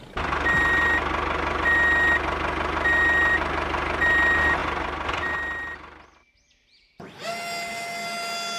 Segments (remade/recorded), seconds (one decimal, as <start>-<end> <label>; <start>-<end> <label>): 0.0-8.6 recorded